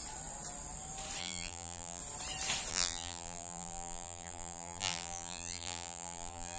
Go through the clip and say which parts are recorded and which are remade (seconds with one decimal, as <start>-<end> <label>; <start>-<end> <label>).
0.0-1.2 recorded; 1.2-2.0 remade; 2.0-2.7 recorded; 2.7-6.6 remade